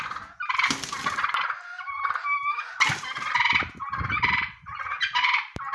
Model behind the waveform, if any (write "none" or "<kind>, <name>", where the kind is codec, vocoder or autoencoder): none